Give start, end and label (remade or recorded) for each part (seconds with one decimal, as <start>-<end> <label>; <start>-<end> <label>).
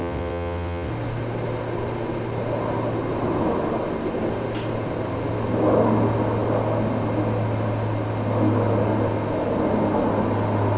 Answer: 0.0-0.9 remade; 0.9-10.8 recorded